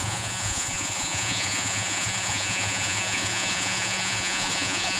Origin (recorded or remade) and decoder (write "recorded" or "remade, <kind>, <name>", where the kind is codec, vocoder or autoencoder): remade, vocoder, Vocos